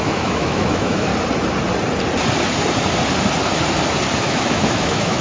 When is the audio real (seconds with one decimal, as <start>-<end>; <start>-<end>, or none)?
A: 1.1-4.2